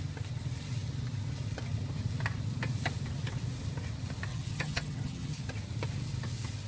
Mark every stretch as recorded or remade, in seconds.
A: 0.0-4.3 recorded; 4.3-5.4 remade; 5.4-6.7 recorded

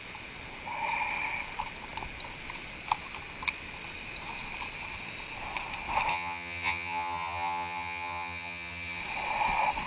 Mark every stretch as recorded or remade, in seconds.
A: 0.0-6.1 recorded; 6.1-9.0 remade; 9.0-9.9 recorded

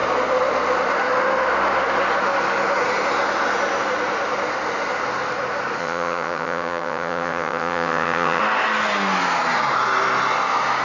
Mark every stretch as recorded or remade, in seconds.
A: 0.0-5.8 recorded; 5.8-8.4 remade; 8.4-10.8 recorded

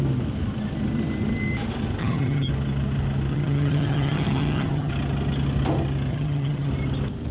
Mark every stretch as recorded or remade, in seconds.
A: 0.0-2.0 recorded; 2.0-2.5 remade; 2.5-3.3 recorded; 3.3-4.9 remade; 4.9-6.1 recorded; 6.1-6.7 remade; 6.7-7.3 recorded

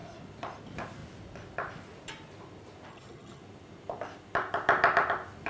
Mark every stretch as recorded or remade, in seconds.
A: 0.0-2.9 recorded; 2.9-3.4 remade; 3.4-5.5 recorded